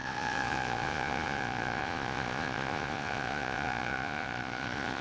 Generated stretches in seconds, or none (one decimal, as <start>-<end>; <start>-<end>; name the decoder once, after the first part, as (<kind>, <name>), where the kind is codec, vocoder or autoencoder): 0.0-5.0 (vocoder, Vocos)